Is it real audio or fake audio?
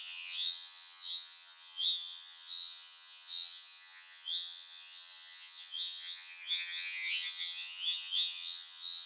fake